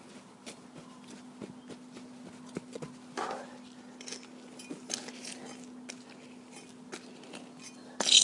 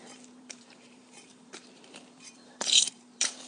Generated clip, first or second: second